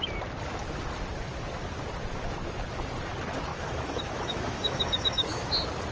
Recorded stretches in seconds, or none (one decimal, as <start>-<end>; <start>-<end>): 0.0-3.5; 5.5-5.9